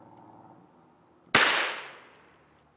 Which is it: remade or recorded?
recorded